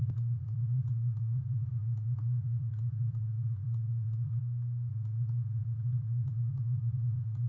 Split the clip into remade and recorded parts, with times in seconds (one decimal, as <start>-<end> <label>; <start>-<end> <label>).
0.0-4.4 remade; 4.4-4.9 recorded; 4.9-7.5 remade